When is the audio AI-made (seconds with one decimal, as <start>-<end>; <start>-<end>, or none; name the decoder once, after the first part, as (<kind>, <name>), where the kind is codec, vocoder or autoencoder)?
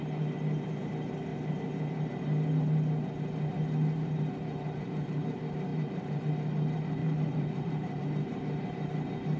5.7-6.2 (vocoder, BigVGAN v2); 7.0-8.0